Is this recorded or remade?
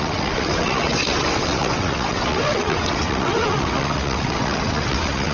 remade